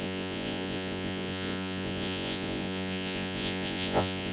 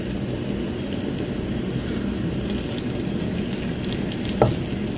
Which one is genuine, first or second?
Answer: second